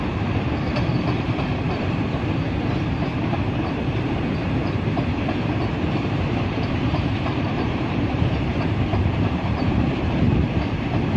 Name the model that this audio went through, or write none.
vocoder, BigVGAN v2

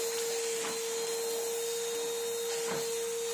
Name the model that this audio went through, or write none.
none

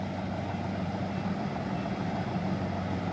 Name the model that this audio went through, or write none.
none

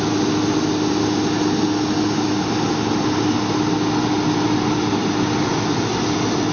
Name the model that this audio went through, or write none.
none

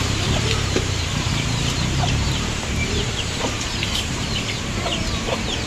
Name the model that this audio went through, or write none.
vocoder, BigVGAN v2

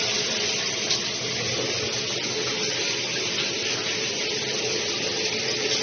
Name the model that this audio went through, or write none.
none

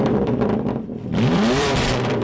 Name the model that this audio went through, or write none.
vocoder, BigVGAN v2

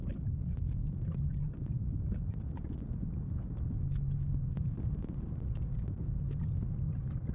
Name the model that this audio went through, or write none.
none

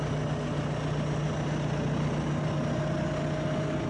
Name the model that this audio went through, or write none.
none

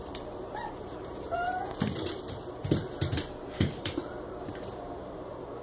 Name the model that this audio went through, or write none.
vocoder, BigVGAN v2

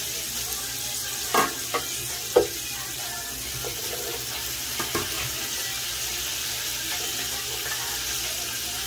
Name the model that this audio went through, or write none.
none